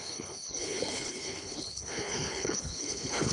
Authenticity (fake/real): fake